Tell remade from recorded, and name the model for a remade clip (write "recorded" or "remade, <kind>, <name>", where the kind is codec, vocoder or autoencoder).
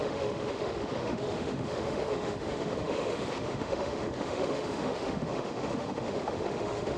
remade, autoencoder, DAC-VAE